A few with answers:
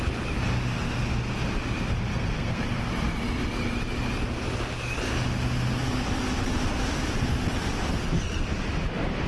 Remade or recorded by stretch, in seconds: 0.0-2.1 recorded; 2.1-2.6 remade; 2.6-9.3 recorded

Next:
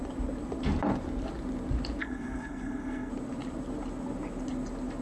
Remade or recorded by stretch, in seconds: 0.0-2.0 recorded; 2.0-3.1 remade; 3.1-5.0 recorded

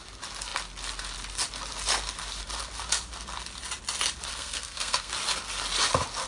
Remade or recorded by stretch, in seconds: 0.0-4.3 recorded; 4.3-5.1 remade; 5.1-6.3 recorded

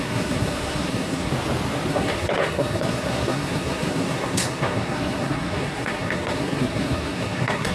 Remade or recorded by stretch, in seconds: 0.0-1.3 remade; 1.3-1.9 recorded; 1.9-7.7 remade